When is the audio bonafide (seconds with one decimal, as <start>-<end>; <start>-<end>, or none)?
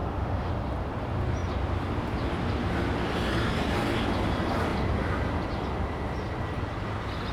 0.5-7.3